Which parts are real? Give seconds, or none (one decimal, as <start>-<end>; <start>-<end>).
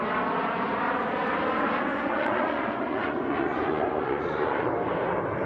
0.0-1.9; 4.7-5.5